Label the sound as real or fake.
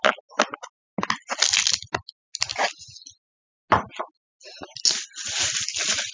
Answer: real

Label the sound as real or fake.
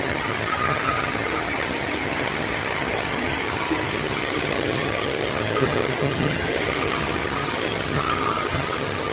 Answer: fake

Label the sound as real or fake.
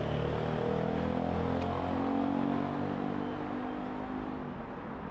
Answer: real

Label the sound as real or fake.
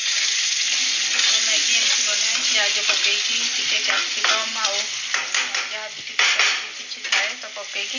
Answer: real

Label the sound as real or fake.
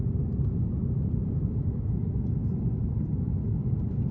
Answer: real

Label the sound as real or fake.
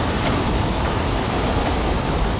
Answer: real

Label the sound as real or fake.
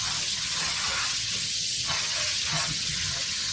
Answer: fake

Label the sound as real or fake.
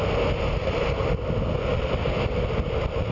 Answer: real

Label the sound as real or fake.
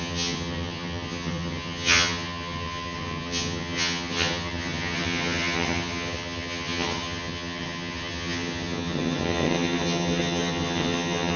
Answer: fake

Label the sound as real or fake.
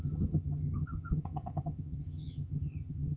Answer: fake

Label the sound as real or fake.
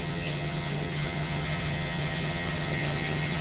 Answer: fake